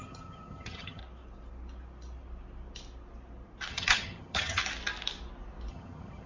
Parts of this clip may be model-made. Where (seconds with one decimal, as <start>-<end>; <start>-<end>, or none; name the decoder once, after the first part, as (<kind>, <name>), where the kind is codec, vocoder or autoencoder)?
0.0-1.0 (vocoder, HiFi-GAN); 3.7-4.6; 5.7-6.3